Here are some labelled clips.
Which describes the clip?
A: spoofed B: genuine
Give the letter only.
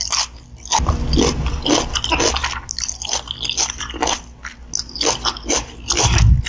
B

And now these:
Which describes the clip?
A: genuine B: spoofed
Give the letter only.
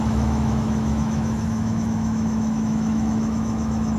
B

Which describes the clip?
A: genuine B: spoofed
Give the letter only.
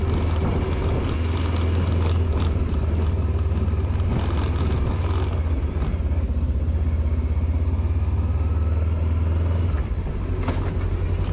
A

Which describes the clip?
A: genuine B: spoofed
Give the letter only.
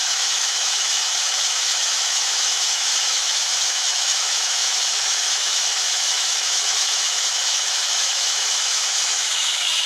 B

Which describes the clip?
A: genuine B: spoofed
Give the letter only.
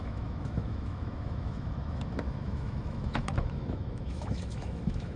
B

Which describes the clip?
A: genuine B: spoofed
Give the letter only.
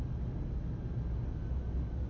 A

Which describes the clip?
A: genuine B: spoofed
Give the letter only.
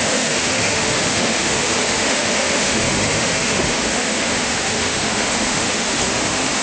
B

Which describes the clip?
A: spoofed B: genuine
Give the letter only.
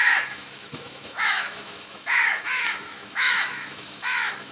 A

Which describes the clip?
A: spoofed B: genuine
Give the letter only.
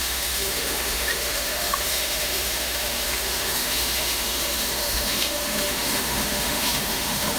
A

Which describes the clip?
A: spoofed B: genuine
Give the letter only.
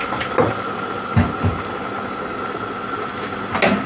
B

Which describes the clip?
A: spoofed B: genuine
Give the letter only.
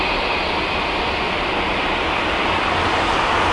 B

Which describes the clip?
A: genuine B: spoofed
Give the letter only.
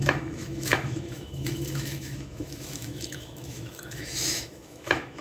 B